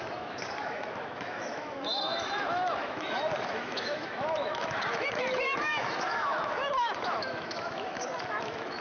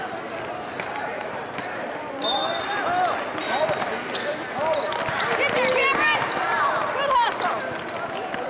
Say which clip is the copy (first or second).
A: first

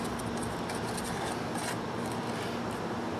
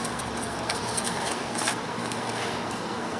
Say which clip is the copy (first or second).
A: second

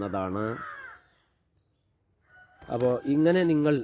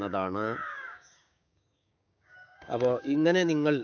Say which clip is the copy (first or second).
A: second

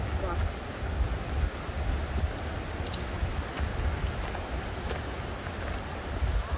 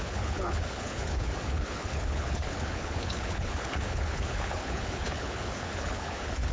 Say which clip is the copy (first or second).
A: second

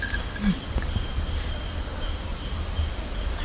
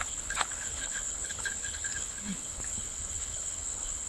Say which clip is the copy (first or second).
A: second